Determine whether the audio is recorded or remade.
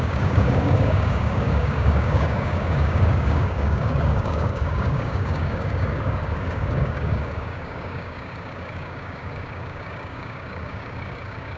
remade